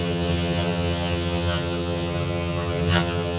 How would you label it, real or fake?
fake